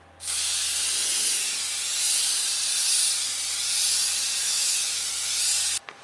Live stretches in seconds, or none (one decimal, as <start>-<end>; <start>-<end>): 0.0-4.4; 5.0-6.0